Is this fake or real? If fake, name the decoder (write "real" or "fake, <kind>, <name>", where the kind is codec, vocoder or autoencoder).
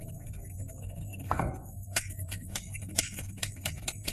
fake, codec, SNAC